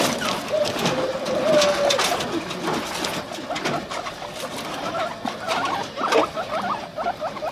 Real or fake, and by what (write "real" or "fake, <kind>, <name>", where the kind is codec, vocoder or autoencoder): real